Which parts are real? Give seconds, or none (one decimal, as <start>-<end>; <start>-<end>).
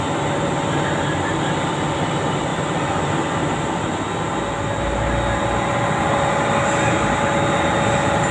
0.0-8.3